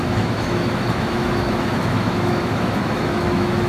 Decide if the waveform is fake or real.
fake